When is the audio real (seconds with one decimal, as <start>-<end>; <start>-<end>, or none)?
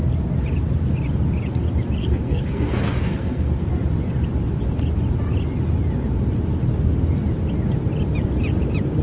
0.0-2.0; 3.7-9.0